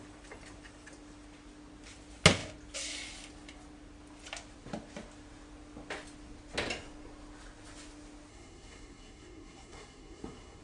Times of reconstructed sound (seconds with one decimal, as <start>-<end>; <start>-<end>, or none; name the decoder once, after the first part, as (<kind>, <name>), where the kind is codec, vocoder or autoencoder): 8.3-10.6 (codec, SNAC)